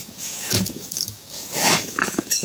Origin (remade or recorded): remade